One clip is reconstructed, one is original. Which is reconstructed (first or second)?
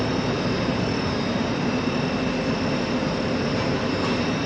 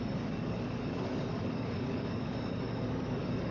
second